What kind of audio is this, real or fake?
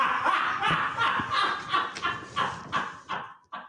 real